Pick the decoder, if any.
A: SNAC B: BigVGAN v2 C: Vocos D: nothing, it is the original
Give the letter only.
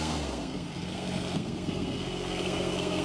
A